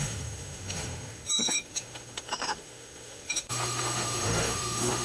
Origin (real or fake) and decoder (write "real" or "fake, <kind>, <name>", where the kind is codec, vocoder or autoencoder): fake, autoencoder, DAC-VAE